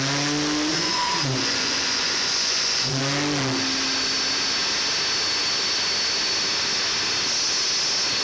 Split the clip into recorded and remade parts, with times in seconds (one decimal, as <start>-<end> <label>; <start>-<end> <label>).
0.0-0.7 recorded; 0.7-3.0 remade; 3.0-8.2 recorded